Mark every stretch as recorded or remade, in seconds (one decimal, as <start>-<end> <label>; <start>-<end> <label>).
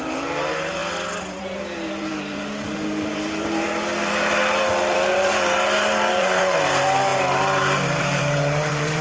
0.0-0.8 remade; 0.8-1.4 recorded; 1.4-9.0 remade